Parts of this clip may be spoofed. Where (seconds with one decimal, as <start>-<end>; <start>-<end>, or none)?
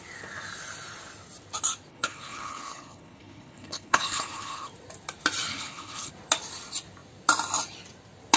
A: 1.9-4.7; 5.5-6.1